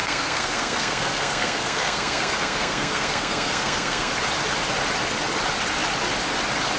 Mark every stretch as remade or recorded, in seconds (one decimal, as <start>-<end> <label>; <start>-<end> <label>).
0.0-4.1 remade; 4.1-6.8 recorded